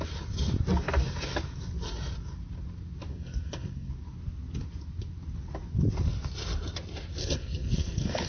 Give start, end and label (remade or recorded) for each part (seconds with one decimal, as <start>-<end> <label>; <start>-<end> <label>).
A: 0.0-3.1 recorded; 3.1-3.9 remade; 3.9-7.2 recorded; 7.2-8.3 remade